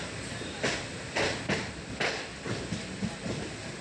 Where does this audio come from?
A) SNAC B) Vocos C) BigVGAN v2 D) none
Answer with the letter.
D